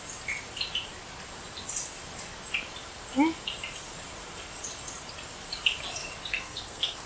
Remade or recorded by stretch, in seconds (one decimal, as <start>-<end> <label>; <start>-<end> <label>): 0.0-6.3 recorded; 6.3-7.1 remade